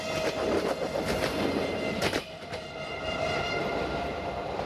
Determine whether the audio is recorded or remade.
recorded